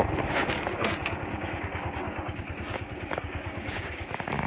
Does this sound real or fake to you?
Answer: fake